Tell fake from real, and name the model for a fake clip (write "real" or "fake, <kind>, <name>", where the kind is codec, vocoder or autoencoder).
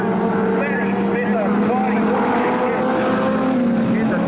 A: real